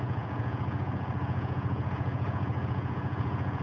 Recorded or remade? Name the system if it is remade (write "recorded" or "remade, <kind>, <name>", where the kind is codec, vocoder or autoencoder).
remade, vocoder, Vocos